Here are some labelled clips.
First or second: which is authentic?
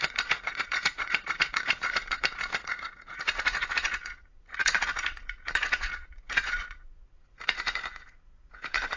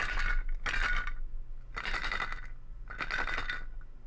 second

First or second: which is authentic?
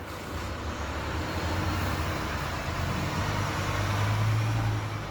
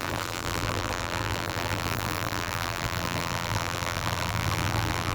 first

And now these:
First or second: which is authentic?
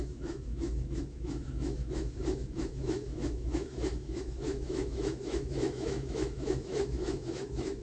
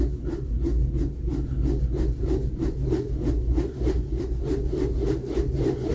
second